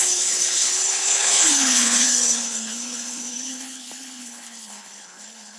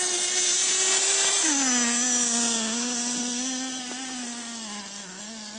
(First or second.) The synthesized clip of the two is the first